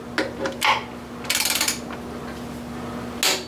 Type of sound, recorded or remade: recorded